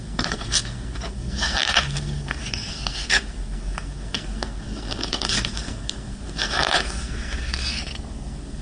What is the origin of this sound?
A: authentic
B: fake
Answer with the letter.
B